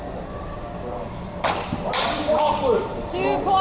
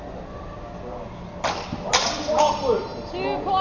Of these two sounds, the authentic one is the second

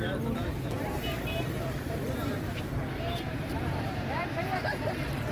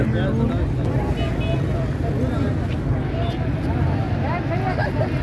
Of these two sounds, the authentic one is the second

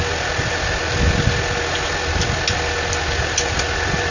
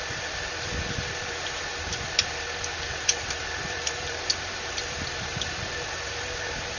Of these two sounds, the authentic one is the first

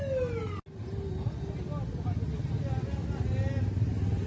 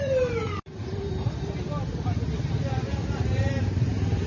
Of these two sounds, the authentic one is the first